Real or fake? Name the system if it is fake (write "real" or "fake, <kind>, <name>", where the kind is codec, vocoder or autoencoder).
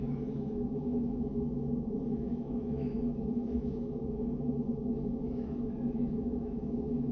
fake, autoencoder, DAC-VAE